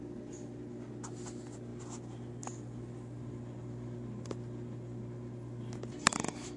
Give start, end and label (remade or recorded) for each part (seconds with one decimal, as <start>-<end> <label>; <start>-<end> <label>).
0.0-6.6 recorded

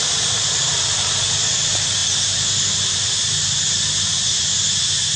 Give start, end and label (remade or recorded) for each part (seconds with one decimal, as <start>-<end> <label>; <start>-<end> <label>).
0.0-5.2 recorded

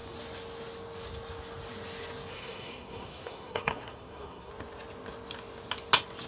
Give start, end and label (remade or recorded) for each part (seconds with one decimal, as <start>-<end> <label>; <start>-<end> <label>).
0.0-2.3 recorded; 2.3-4.5 remade; 4.5-6.3 recorded

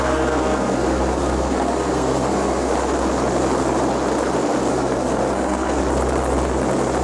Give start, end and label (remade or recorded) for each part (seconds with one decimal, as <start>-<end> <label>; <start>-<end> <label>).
0.0-2.7 remade; 2.7-4.7 recorded; 4.7-5.8 remade; 5.8-7.0 recorded

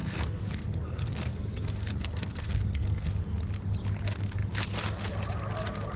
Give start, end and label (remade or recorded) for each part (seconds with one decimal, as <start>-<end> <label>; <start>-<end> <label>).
0.0-3.2 remade; 3.2-6.0 recorded